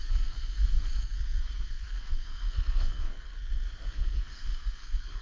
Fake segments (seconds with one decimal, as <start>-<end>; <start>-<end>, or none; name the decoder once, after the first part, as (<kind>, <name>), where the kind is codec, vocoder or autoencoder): 0.0-5.2 (codec, SNAC)